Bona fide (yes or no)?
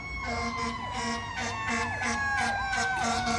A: yes